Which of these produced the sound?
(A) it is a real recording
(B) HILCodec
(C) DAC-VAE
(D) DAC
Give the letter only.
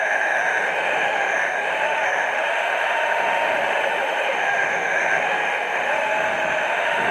C